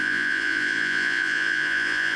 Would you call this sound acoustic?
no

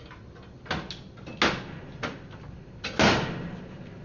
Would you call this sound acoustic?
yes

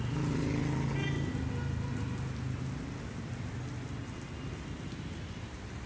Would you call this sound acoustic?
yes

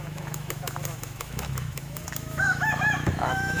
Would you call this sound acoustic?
no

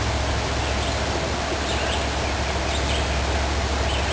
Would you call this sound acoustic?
yes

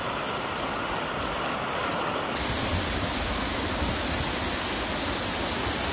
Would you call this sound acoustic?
yes